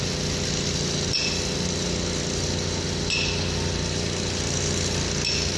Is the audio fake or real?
real